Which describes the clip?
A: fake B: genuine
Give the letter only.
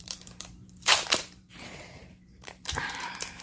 A